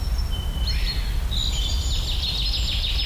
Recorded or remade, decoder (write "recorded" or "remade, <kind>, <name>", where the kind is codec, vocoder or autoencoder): recorded